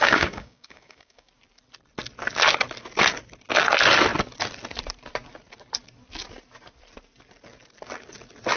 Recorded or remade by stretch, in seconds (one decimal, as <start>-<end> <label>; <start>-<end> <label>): 0.0-1.3 remade; 1.3-8.6 recorded